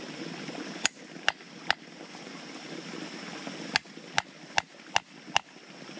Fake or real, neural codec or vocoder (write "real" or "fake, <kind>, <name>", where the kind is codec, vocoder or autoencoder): real